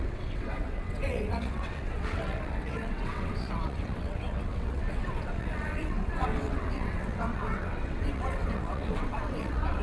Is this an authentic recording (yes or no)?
no